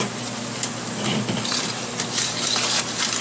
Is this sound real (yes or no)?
yes